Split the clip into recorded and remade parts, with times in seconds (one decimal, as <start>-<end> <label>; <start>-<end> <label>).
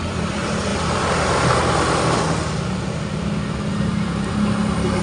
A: 0.0-0.7 remade; 0.7-3.7 recorded; 3.7-5.0 remade